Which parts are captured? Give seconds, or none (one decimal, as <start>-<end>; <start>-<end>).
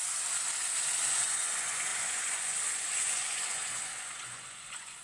0.0-1.1